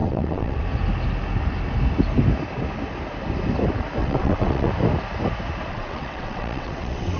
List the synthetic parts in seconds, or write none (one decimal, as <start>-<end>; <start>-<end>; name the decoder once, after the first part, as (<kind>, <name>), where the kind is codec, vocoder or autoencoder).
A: 0.0-0.6 (vocoder, WaveNeXt); 4.0-4.7; 5.7-7.2